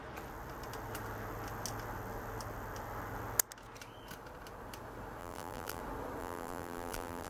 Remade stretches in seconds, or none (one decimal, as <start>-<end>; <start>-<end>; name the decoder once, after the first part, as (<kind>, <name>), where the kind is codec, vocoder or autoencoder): 5.2-5.8 (vocoder, BigVGAN v2); 6.2-7.3